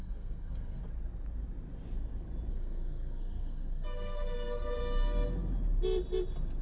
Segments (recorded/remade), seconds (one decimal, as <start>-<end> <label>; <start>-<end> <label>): 0.0-0.8 remade; 0.8-2.5 recorded; 2.5-4.8 remade; 4.8-6.6 recorded